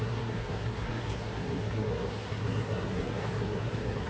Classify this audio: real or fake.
fake